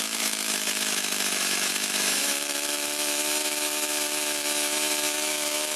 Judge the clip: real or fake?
fake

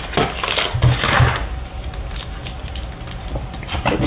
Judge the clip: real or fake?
real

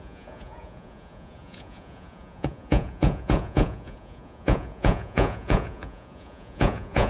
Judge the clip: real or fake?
fake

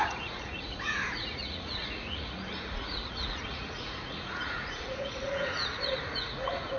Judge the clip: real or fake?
fake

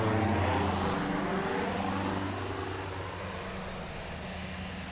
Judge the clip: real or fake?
real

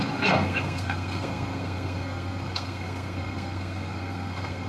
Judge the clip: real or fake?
fake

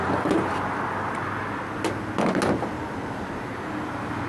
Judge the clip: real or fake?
real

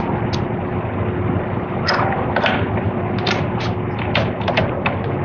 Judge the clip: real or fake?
real